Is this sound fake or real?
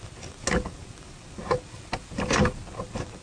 real